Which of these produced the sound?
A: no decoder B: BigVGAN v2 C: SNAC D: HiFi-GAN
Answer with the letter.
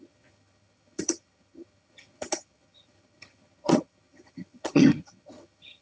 D